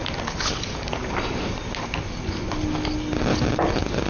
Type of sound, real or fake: real